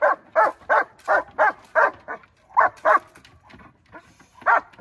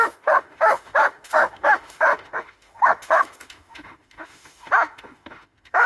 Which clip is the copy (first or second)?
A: second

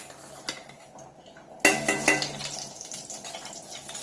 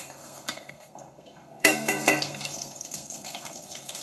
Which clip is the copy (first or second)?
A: second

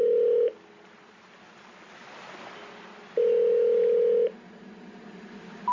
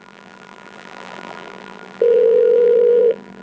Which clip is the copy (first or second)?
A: second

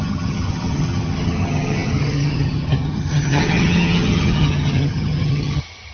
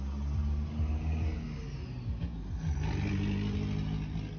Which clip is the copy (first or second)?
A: first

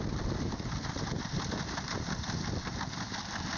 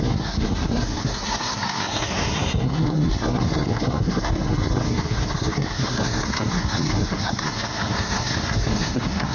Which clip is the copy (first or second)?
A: second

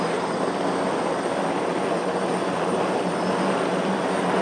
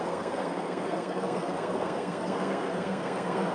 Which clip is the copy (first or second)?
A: second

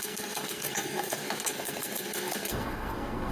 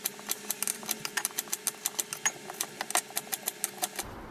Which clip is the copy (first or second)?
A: first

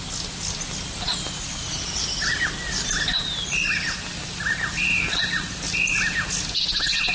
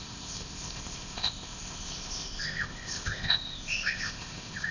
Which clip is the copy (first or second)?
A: second